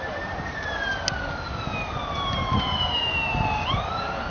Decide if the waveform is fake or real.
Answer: real